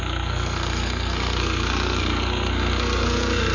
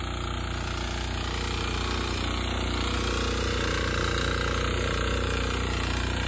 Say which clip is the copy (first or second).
first